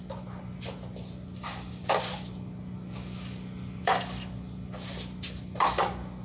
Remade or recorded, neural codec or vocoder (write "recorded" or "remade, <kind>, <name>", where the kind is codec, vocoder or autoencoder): recorded